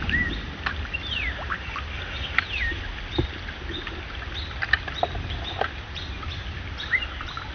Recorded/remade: recorded